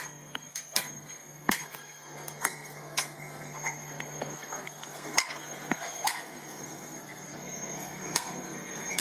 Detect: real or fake fake